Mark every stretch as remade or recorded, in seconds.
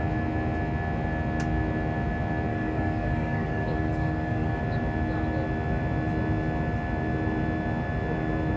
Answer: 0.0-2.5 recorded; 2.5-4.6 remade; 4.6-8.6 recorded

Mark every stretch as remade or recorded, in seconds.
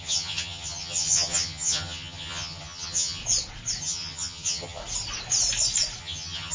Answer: 0.0-3.2 remade; 3.2-3.8 recorded; 3.8-4.8 remade; 4.8-6.0 recorded; 6.0-6.5 remade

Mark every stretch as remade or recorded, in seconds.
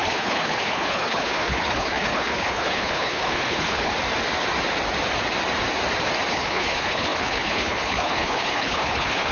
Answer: 0.0-3.9 remade; 3.9-6.3 recorded; 6.3-9.3 remade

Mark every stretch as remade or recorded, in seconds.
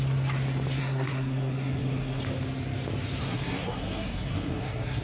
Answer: 0.0-0.8 recorded; 0.8-2.2 remade; 2.2-3.2 recorded; 3.2-5.0 remade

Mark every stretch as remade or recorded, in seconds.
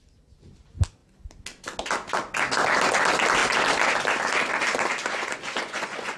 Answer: 0.0-5.0 recorded; 5.0-6.2 remade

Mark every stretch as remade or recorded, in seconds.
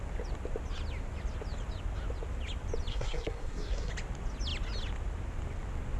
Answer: 0.0-2.9 recorded; 2.9-3.9 remade; 3.9-6.0 recorded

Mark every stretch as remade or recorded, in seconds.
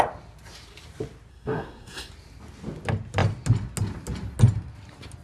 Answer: 0.0-1.3 recorded; 1.3-2.1 remade; 2.1-5.2 recorded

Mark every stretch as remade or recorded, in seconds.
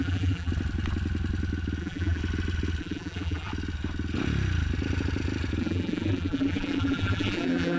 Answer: 0.0-0.5 remade; 0.5-1.8 recorded; 1.8-2.2 remade; 2.2-2.8 recorded; 2.8-3.5 remade; 3.5-5.6 recorded; 5.6-7.8 remade